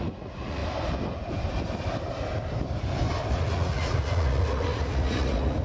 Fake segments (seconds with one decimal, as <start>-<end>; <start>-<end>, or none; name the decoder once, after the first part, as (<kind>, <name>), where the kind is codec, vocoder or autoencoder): 0.0-0.6 (vocoder, Vocos); 3.3-5.6